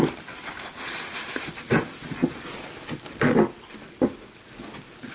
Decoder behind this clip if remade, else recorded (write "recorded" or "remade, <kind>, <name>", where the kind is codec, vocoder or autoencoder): recorded